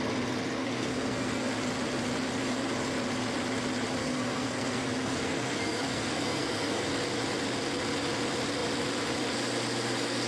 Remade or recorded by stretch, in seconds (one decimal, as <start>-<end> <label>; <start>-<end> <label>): 0.0-0.6 recorded; 0.6-1.5 remade; 1.5-4.0 recorded; 4.0-6.9 remade; 6.9-10.3 recorded